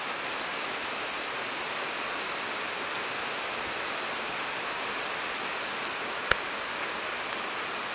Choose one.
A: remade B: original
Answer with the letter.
B